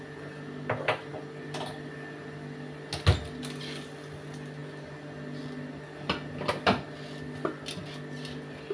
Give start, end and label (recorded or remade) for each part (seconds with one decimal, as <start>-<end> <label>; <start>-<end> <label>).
0.0-8.7 recorded